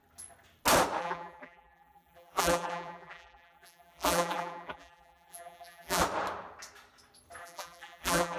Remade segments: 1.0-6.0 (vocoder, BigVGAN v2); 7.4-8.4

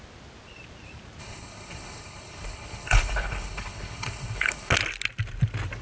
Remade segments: 1.2-4.7 (codec, HILCodec)